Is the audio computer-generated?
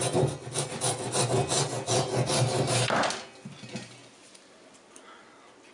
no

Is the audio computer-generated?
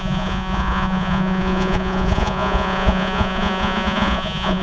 yes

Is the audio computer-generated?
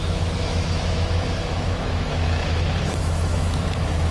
yes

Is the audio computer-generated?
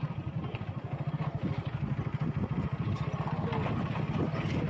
no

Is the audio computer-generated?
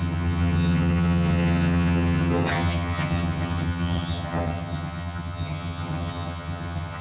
yes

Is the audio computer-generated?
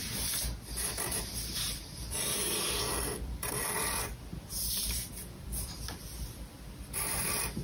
yes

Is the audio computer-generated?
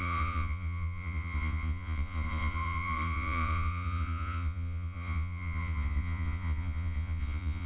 yes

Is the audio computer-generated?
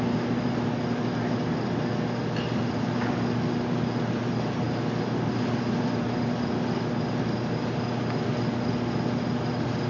no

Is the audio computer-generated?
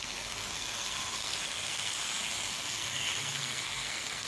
yes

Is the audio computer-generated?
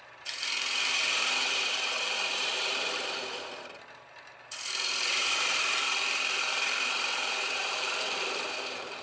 yes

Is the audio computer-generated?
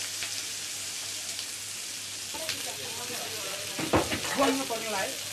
no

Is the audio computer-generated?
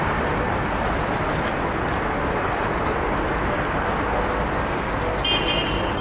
no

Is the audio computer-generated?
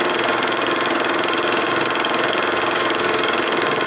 yes